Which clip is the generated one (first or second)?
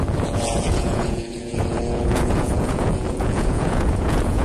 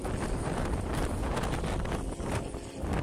first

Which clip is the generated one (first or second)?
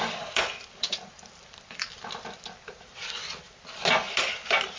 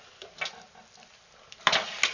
first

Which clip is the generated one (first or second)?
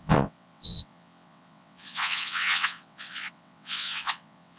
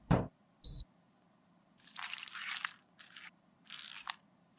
first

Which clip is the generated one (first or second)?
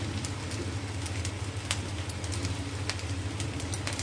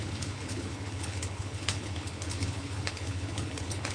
second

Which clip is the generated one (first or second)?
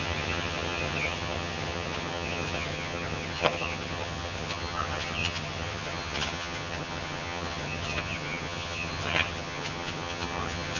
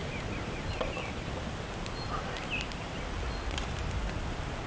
first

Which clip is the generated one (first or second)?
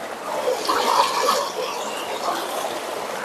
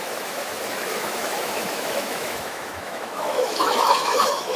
second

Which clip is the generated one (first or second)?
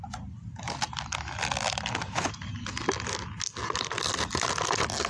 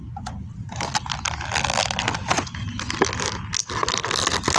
second